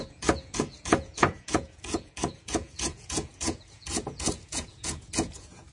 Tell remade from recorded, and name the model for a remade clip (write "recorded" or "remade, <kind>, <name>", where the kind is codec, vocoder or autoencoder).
remade, vocoder, Vocos